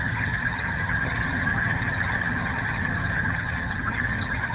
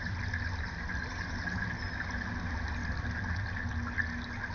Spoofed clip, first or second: first